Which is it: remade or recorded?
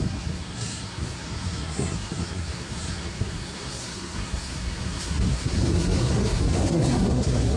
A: remade